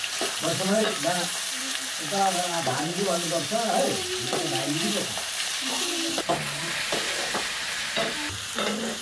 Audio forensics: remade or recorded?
remade